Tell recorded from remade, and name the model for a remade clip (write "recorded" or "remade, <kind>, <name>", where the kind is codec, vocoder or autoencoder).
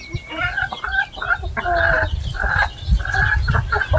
recorded